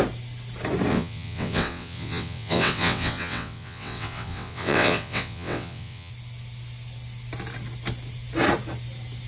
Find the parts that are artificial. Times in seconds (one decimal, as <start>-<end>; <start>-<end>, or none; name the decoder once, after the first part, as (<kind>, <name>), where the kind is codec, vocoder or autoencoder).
0.9-6.1 (vocoder, WaveNeXt)